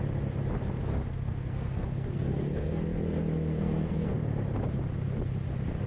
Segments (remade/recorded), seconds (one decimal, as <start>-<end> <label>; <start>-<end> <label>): 0.0-0.9 recorded; 0.9-4.3 remade; 4.3-5.9 recorded